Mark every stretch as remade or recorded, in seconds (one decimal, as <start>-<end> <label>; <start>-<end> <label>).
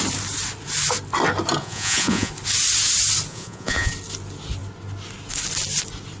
0.0-1.6 recorded; 1.6-2.3 remade; 2.3-3.3 recorded; 3.3-3.9 remade; 3.9-6.2 recorded